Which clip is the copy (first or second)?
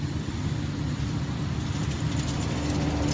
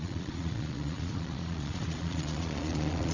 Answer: second